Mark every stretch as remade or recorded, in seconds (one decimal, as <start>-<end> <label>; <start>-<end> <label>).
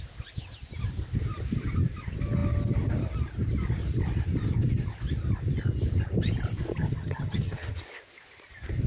0.0-6.7 recorded; 6.7-7.8 remade; 7.8-8.9 recorded